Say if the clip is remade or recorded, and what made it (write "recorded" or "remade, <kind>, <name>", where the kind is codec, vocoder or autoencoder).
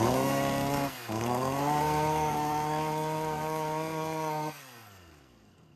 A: remade, codec, SNAC